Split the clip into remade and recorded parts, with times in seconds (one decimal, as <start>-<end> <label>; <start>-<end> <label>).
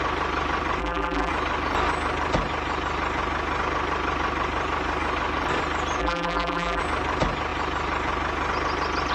0.0-0.8 recorded; 0.8-1.3 remade; 1.3-6.0 recorded; 6.0-6.8 remade; 6.8-9.1 recorded